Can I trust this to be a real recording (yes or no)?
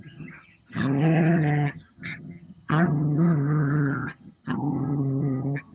no